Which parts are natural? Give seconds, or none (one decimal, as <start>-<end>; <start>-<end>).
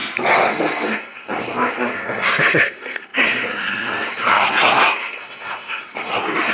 0.0-0.5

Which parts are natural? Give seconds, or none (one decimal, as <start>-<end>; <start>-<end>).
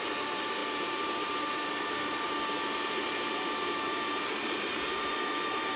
none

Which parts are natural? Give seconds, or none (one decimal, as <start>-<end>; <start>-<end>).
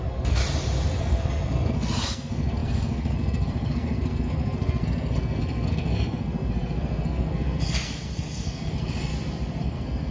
0.4-1.0; 9.1-9.6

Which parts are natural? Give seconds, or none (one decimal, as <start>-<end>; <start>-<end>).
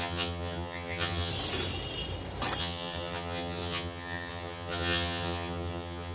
1.3-2.6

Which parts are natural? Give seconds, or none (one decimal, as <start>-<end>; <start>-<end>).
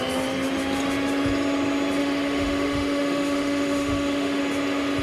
0.0-2.0; 4.4-5.0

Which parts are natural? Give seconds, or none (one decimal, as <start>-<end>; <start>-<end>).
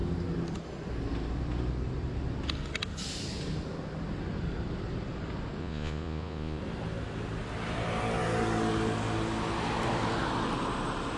0.0-5.6; 6.6-11.2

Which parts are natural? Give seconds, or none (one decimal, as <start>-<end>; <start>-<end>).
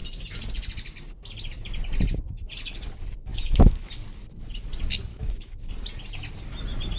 0.0-3.3; 3.9-5.1; 5.7-7.0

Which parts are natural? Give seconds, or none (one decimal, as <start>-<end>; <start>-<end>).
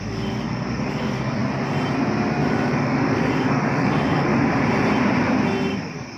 1.4-2.5; 4.3-5.7